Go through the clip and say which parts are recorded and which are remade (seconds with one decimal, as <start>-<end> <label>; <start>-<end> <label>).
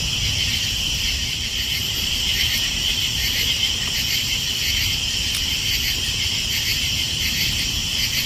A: 0.0-1.8 recorded; 1.8-5.3 remade; 5.3-8.3 recorded